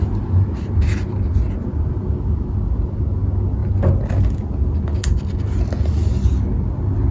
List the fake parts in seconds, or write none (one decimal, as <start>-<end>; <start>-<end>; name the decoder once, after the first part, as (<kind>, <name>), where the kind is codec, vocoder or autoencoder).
none